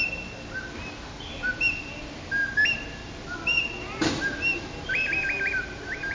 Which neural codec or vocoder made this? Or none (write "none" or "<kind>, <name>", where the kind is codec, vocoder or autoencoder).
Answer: none